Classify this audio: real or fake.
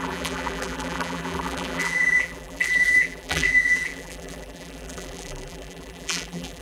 fake